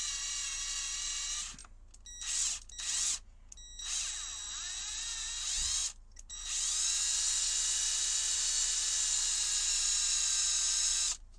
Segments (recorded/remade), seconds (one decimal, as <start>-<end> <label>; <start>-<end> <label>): 0.0-11.4 recorded